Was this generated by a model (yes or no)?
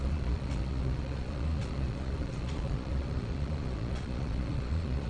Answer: yes